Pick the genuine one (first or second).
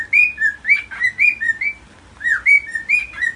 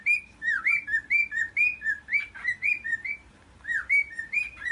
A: first